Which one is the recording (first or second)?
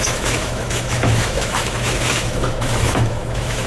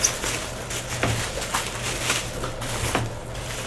second